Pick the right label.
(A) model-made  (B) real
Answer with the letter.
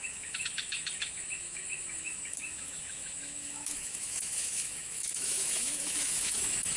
A